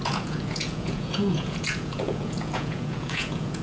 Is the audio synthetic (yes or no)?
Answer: yes